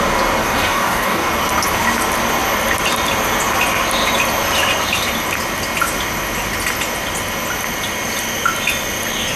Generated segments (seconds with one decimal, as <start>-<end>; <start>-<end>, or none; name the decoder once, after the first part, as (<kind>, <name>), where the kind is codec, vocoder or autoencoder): 0.4-1.3 (codec, DAC)